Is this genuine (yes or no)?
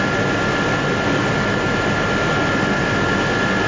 yes